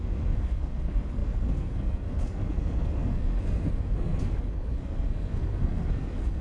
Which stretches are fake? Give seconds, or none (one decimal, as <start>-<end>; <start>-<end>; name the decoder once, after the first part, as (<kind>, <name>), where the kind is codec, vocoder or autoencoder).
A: 0.0-6.4 (codec, SNAC)